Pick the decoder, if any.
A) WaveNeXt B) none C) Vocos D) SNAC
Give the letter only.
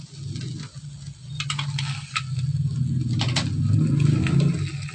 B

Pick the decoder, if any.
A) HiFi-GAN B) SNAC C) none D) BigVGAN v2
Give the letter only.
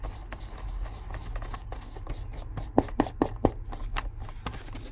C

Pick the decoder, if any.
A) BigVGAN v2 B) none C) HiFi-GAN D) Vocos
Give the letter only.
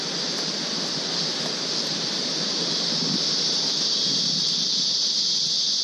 B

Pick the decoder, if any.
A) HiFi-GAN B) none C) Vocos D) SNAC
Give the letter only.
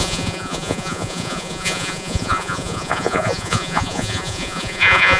C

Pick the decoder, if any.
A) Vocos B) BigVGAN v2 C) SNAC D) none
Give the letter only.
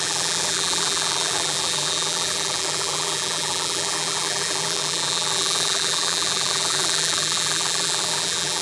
B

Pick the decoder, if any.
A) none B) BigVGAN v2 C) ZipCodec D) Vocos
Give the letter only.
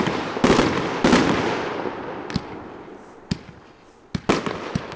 A